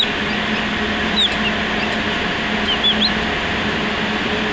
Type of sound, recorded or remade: recorded